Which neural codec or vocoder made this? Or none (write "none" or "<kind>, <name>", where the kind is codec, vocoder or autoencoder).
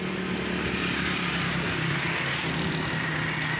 none